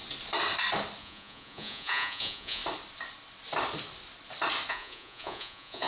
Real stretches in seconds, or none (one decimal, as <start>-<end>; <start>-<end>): 0.0-1.0; 2.6-4.7